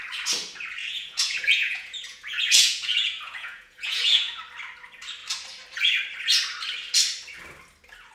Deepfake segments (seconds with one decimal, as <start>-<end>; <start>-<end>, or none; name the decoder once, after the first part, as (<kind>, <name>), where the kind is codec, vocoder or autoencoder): 0.8-4.4 (vocoder, Vocos)